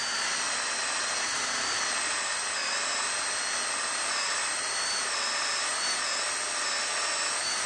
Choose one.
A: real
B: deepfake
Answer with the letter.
A